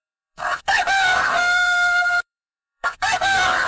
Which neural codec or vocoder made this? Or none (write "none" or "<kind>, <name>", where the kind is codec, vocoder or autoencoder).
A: codec, SNAC